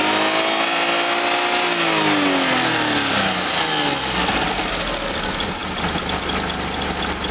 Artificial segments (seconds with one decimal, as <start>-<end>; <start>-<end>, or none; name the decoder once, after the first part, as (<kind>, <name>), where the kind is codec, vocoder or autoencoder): none